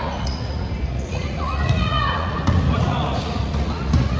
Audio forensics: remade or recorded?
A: remade